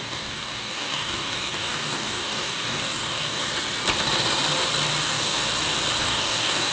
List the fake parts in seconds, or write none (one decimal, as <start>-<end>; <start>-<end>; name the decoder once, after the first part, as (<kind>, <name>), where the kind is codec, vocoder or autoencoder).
0.0-3.5 (codec, DAC); 5.0-5.4; 6.0-6.7